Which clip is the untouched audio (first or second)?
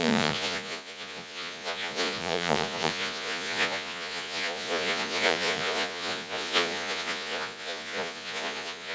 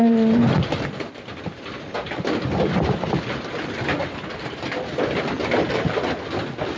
second